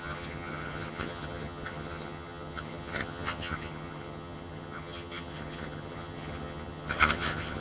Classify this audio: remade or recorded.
remade